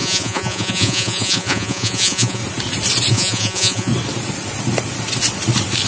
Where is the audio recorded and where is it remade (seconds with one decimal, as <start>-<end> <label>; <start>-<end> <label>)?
0.0-2.4 remade; 2.4-3.1 recorded; 3.1-3.9 remade; 3.9-5.9 recorded